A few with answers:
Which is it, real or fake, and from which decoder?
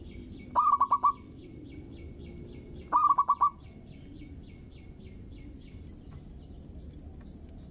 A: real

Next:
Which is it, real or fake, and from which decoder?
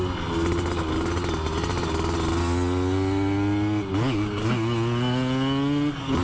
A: real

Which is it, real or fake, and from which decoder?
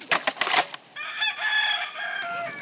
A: real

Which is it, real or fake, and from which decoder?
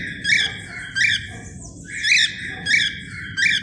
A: real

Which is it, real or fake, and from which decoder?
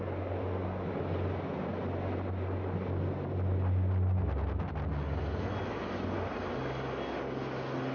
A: real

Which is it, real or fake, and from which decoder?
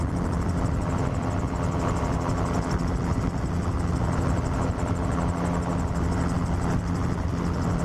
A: real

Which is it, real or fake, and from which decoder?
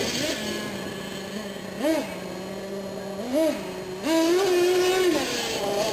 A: real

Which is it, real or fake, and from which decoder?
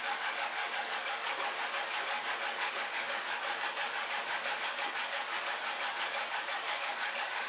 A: fake, codec, DAC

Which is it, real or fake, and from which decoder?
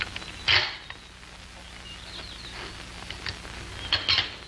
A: real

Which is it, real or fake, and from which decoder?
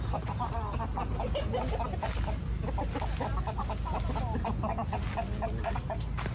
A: real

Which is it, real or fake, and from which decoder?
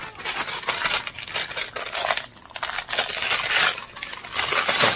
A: real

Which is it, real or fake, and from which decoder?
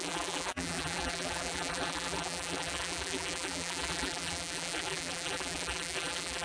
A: fake, vocoder, BigVGAN v2